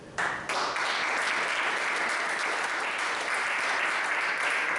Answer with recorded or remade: recorded